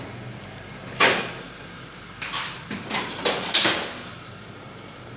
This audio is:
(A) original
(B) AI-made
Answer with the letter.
B